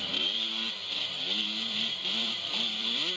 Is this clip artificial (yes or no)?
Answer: yes